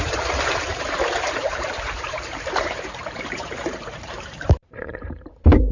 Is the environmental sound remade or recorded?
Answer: remade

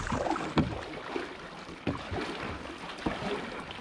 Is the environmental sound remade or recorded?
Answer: recorded